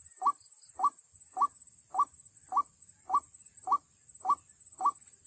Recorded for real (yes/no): yes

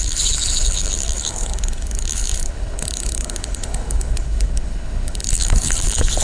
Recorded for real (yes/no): no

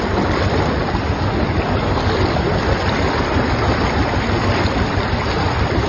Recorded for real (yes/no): yes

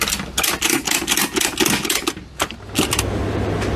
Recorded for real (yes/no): yes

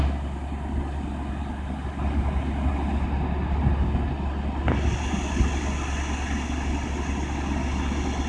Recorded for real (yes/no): yes